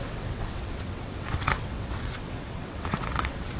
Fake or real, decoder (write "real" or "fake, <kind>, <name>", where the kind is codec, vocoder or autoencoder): fake, vocoder, WaveNeXt